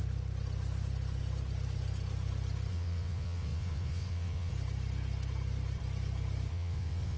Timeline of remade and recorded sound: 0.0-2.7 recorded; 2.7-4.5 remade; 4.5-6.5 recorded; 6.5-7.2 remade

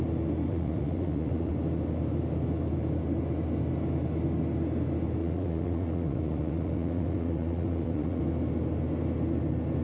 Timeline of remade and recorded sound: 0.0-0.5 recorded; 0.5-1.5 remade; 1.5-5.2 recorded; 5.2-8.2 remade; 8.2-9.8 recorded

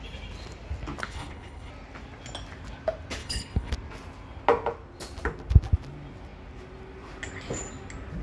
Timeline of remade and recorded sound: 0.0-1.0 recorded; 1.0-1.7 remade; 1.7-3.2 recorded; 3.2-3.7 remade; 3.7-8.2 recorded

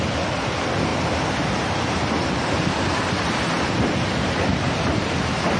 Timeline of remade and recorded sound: 0.0-5.6 recorded

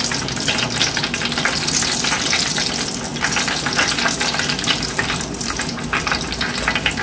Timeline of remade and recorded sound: 0.0-7.0 recorded

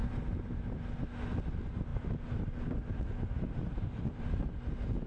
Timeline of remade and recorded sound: 0.0-0.6 remade; 0.6-1.9 recorded; 1.9-5.1 remade

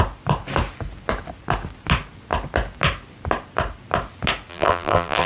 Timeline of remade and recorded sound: 0.0-4.5 recorded; 4.5-5.3 remade

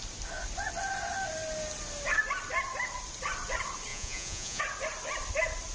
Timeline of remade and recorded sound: 0.0-3.9 recorded; 3.9-4.6 remade; 4.6-5.7 recorded